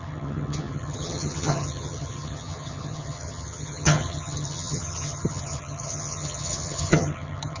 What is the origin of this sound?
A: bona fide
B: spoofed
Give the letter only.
B